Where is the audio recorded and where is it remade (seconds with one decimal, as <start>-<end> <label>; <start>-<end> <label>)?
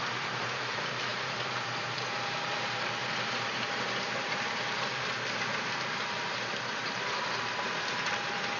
0.0-8.6 remade